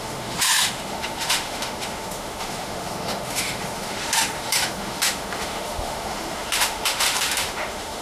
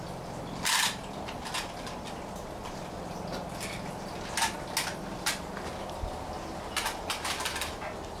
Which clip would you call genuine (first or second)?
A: second